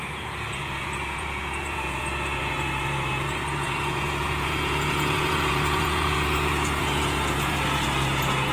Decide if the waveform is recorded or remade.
remade